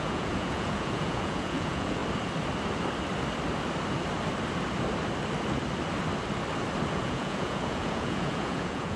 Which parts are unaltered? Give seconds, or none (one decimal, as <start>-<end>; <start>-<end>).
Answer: 2.0-6.9